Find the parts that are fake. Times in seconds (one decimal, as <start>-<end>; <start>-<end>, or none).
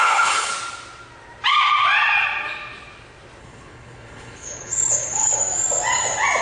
0.0-0.5; 3.4-5.4